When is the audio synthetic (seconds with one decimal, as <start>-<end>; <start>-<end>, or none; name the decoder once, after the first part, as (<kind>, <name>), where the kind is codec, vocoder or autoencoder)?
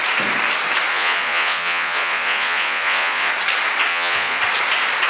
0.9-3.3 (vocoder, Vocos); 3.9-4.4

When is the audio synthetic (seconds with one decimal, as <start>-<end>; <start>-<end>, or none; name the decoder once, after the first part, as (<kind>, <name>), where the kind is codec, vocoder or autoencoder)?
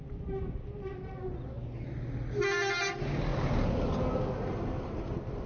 none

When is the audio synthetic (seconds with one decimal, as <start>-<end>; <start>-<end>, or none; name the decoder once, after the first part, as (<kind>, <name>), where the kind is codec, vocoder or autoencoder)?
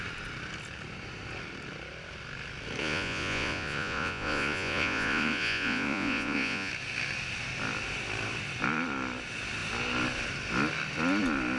2.8-6.7 (vocoder, Vocos)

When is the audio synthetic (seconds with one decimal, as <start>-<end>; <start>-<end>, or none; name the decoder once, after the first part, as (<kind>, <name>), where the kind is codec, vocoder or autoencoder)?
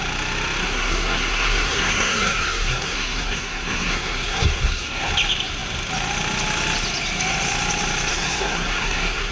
0.6-5.1 (codec, SNAC); 8.1-9.3